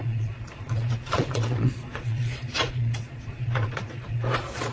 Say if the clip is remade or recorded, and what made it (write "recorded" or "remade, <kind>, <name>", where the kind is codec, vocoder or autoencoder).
remade, vocoder, Vocos